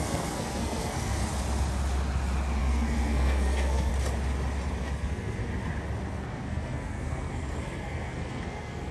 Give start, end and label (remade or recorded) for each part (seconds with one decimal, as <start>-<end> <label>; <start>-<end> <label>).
0.0-1.3 remade; 1.3-2.6 recorded; 2.6-3.9 remade; 3.9-4.8 recorded; 4.8-5.4 remade; 5.4-6.1 recorded; 6.1-8.9 remade